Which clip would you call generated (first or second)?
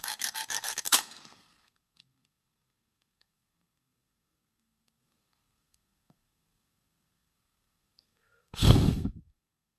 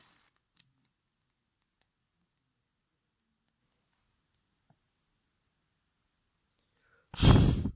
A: first